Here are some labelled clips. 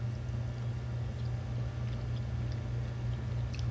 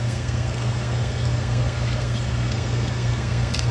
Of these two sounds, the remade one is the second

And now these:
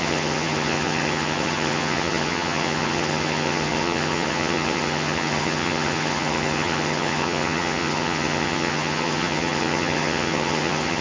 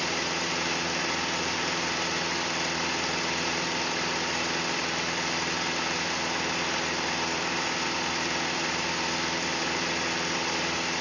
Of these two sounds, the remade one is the first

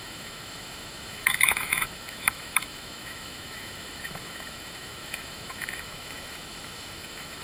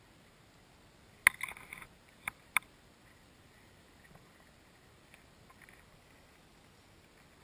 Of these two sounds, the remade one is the first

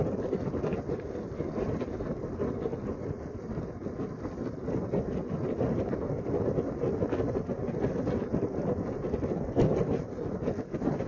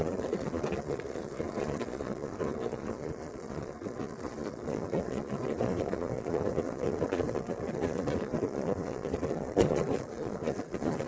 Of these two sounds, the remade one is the second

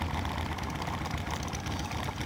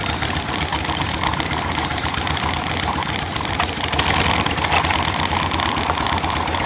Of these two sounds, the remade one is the second